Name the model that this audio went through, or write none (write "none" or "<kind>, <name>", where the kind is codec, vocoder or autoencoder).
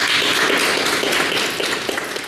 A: none